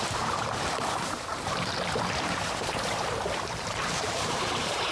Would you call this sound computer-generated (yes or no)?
yes